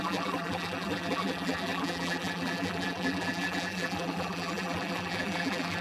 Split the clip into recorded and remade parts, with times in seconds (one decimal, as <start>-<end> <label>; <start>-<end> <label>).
0.0-5.8 remade

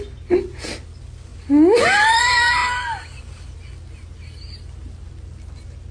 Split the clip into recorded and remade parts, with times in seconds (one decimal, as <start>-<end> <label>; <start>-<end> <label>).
0.0-5.9 recorded

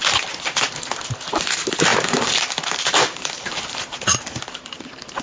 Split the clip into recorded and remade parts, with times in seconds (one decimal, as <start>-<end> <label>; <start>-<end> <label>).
0.0-1.9 recorded; 1.9-3.5 remade; 3.5-4.1 recorded; 4.1-5.2 remade